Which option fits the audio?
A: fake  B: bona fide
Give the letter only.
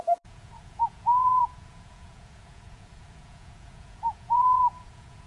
A